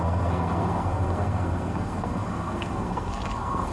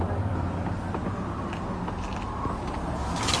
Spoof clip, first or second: first